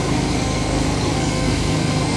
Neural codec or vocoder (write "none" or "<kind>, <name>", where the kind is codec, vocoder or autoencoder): codec, SNAC